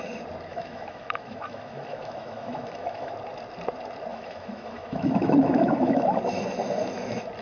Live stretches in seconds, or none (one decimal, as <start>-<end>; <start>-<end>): 0.0-0.5; 3.1-4.1; 6.2-7.4